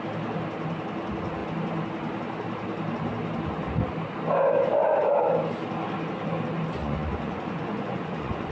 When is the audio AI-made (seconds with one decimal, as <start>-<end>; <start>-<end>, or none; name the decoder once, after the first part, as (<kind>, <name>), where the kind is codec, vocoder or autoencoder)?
6.8-8.5 (vocoder, Vocos)